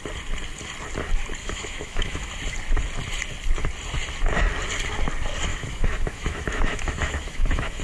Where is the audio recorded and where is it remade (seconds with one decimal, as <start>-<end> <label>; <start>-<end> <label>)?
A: 0.0-1.4 recorded; 1.4-2.3 remade; 2.3-5.5 recorded; 5.5-7.8 remade